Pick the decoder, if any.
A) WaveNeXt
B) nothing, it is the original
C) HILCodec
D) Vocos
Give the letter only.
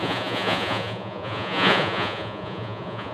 D